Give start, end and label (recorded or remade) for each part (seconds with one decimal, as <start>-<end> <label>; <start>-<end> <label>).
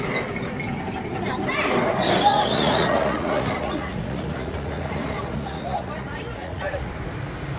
0.0-2.3 recorded; 2.3-6.9 remade; 6.9-7.6 recorded